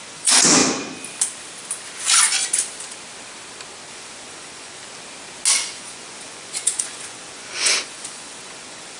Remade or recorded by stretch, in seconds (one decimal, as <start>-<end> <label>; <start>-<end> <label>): 0.0-0.6 remade; 0.6-3.9 recorded; 3.9-4.8 remade; 4.8-5.5 recorded; 5.5-9.0 remade